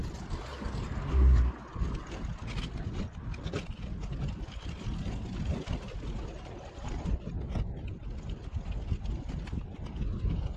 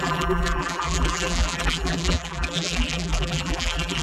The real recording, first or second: first